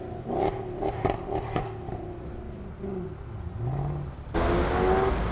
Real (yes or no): yes